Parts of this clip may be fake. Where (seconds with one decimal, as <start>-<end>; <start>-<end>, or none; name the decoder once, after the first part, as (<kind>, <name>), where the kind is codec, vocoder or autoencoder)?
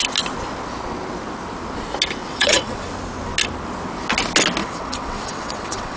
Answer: 2.2-2.8 (vocoder, WaveNeXt); 4.6-6.0